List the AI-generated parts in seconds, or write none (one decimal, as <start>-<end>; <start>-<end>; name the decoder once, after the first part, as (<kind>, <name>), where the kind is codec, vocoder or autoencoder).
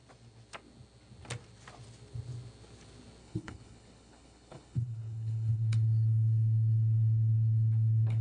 3.2-8.2 (codec, HILCodec)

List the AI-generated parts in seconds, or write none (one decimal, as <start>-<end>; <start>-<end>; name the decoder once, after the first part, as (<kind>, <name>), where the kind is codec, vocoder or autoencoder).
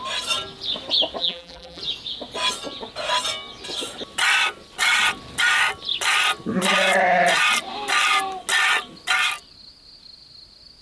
1.2-1.8 (vocoder, BigVGAN v2)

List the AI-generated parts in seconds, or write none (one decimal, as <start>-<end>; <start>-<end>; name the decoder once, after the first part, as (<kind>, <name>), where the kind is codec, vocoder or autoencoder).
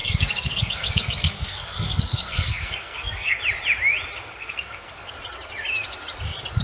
0.0-3.4 (codec, SNAC); 4.3-5.1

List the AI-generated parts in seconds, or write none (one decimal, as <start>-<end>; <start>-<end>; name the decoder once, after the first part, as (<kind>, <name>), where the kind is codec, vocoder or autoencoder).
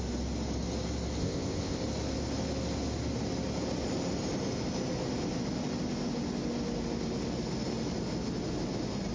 1.2-1.8 (codec, ZipCodec)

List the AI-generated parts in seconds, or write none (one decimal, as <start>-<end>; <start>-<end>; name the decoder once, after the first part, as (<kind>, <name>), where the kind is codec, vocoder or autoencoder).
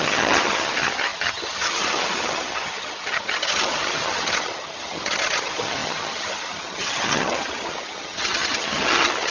0.0-9.3 (vocoder, HiFi-GAN)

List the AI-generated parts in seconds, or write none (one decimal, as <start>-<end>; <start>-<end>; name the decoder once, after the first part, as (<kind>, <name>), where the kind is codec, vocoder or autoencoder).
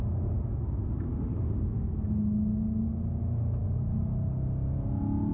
1.1-1.9 (autoencoder, DAC-VAE)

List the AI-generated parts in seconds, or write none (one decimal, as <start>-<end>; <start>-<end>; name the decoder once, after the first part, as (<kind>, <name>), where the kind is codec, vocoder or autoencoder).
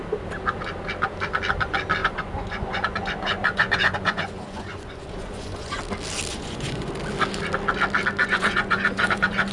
2.0-5.8 (vocoder, Vocos); 6.3-6.9; 8.2-9.5